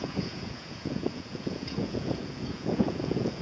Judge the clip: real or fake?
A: fake